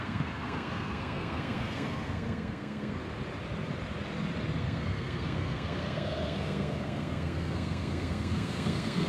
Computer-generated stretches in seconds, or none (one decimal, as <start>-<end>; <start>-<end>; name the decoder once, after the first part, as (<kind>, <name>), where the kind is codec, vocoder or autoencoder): 0.0-3.0 (codec, SNAC); 4.6-9.1